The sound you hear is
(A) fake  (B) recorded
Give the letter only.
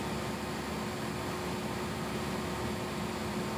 B